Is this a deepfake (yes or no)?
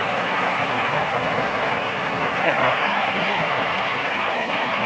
yes